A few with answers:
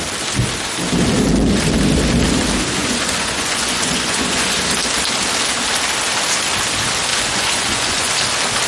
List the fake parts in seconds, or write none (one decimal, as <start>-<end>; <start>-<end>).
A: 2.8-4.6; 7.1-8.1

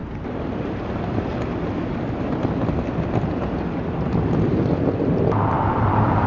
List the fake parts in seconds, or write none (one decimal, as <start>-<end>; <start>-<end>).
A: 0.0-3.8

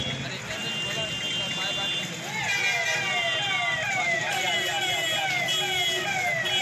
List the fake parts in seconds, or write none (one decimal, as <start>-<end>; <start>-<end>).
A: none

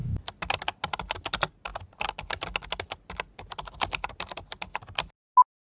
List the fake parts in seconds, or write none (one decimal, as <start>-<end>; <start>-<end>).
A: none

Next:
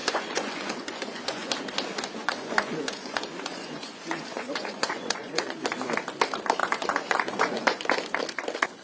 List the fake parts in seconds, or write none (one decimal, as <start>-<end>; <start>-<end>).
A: 0.0-1.5; 2.2-5.6; 6.6-7.8